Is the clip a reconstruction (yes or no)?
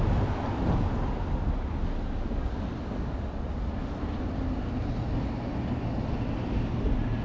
no